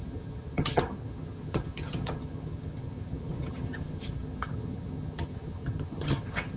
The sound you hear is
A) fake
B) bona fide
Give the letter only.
A